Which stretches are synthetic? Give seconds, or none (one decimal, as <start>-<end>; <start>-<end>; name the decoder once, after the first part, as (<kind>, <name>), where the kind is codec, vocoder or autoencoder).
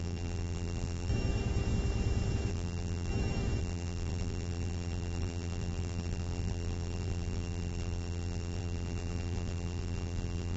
0.0-1.1 (vocoder, BigVGAN v2); 2.5-3.1; 3.6-10.6